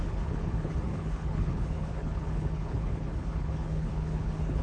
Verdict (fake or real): fake